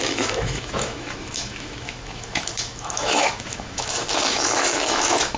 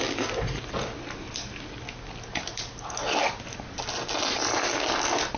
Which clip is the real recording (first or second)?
second